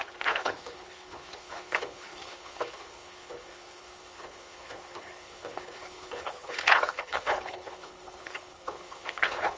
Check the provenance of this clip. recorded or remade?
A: remade